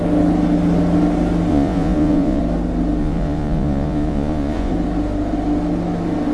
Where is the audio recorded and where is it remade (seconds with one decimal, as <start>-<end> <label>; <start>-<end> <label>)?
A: 0.0-1.5 recorded; 1.5-2.4 remade; 2.4-3.0 recorded; 3.0-4.7 remade; 4.7-6.3 recorded